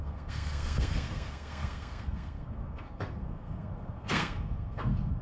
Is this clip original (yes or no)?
no